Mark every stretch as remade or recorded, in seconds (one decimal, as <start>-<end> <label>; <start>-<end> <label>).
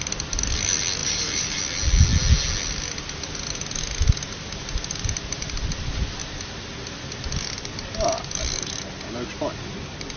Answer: 0.0-1.0 recorded; 1.0-1.6 remade; 1.6-10.2 recorded